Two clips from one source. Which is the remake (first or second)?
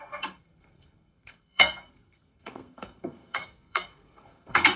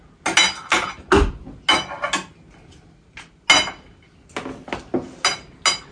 first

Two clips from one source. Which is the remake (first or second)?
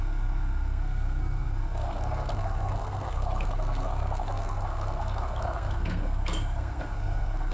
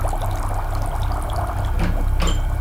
first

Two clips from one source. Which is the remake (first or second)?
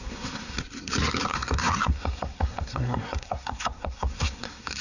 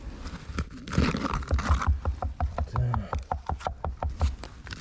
first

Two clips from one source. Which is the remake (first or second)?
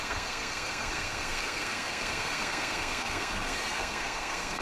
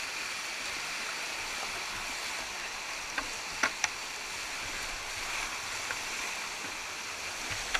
first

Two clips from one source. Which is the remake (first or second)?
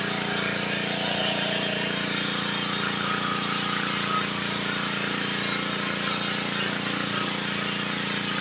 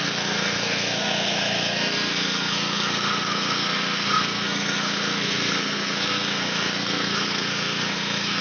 second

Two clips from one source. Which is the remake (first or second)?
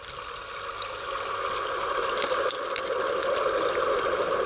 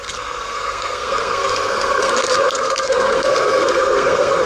second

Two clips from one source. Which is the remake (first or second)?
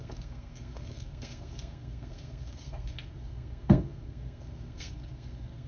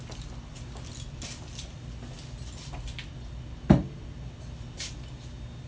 first